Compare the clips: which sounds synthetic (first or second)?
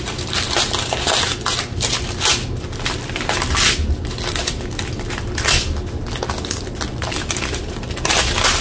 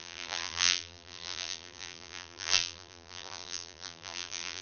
second